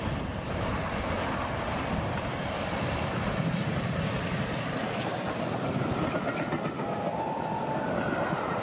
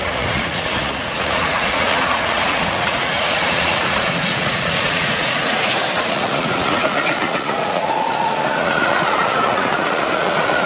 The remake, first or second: second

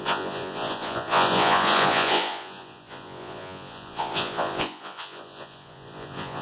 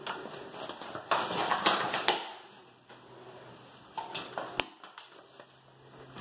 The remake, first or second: first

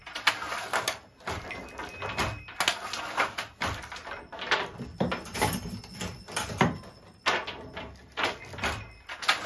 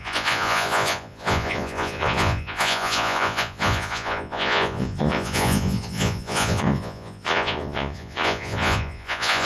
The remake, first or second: second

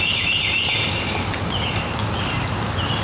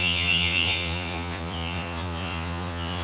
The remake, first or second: second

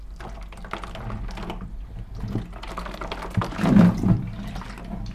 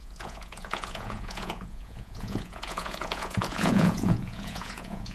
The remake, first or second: second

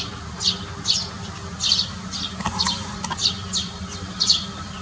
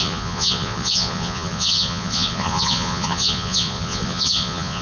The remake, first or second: second